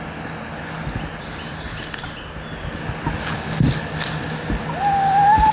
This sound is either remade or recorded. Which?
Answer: recorded